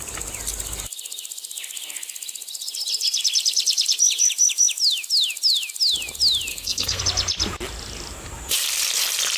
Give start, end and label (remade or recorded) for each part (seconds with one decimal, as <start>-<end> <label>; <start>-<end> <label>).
0.0-6.5 recorded; 6.5-7.0 remade; 7.0-9.4 recorded